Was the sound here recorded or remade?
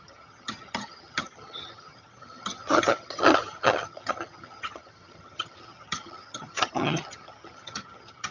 remade